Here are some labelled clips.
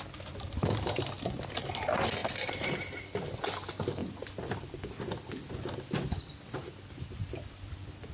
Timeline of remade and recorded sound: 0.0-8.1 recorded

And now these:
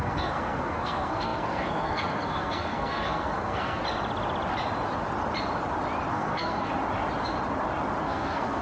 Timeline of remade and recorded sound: 0.0-3.8 remade; 3.8-6.1 recorded; 6.1-6.7 remade; 6.7-8.0 recorded; 8.0-8.6 remade

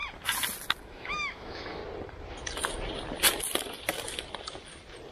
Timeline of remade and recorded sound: 0.0-0.8 recorded; 0.8-1.8 remade; 1.8-5.1 recorded

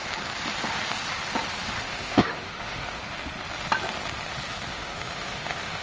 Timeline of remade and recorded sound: 0.0-1.8 recorded; 1.8-3.0 remade; 3.0-4.7 recorded; 4.7-5.8 remade